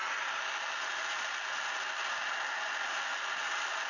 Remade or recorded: recorded